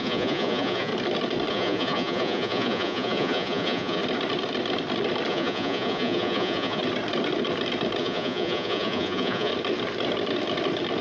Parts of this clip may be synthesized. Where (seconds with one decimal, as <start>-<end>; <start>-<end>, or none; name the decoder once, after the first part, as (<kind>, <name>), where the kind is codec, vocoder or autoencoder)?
0.0-0.9 (vocoder, Vocos); 1.5-4.0; 5.3-6.8; 8.0-9.5